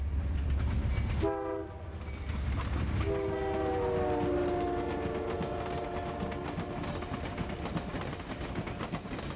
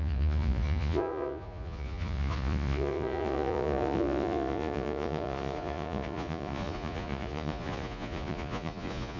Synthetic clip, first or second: second